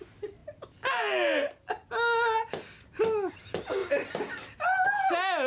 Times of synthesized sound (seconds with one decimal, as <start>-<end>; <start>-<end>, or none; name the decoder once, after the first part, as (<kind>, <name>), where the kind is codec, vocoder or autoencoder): none